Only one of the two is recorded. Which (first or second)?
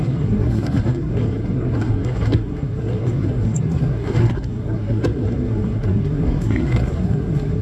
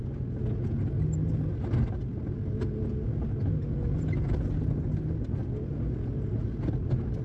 second